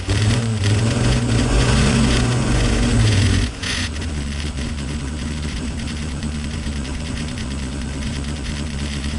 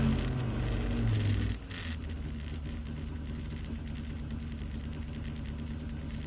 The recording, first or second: second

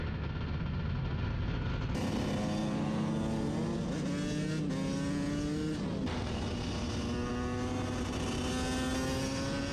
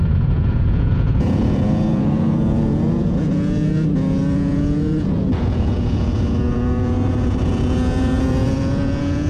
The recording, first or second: first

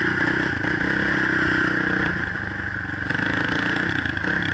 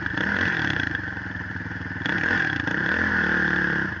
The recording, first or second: first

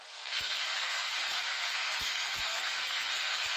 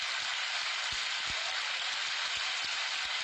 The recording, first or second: second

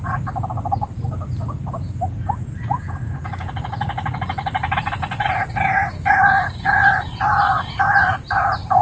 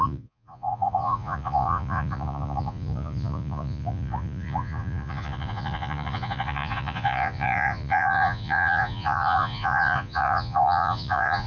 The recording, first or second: first